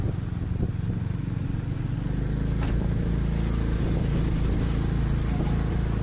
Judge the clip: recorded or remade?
recorded